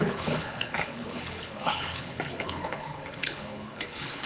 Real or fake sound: fake